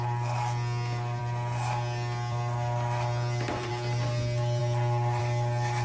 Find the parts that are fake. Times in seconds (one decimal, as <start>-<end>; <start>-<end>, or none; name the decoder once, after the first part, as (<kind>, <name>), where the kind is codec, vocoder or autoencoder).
none